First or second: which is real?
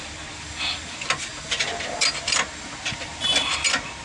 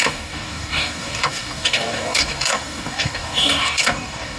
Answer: first